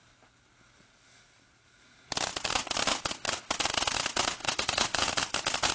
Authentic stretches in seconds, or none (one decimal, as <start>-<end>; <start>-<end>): 0.0-4.4; 5.0-5.7